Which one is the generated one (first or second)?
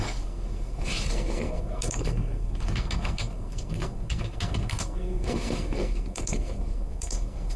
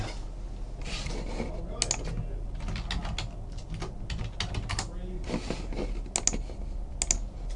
first